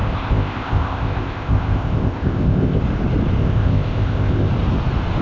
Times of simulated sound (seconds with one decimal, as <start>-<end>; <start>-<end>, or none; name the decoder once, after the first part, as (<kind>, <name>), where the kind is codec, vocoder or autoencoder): 0.0-2.8 (codec, ZipCodec); 3.4-4.5